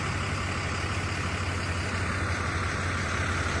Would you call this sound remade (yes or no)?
no